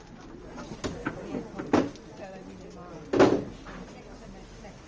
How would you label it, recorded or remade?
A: recorded